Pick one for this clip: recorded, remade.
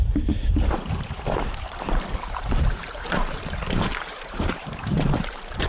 remade